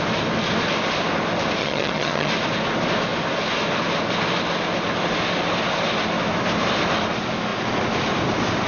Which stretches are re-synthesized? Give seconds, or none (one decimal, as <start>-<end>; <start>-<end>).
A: 1.6-2.3